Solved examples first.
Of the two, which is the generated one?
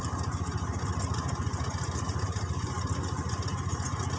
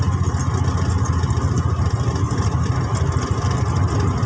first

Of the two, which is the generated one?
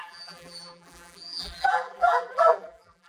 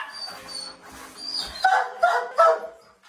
first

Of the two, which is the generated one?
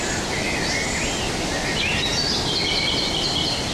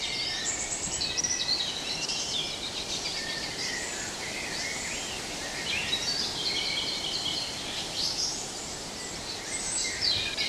second